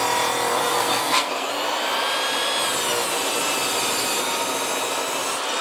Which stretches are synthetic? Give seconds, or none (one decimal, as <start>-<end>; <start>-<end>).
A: 0.6-1.5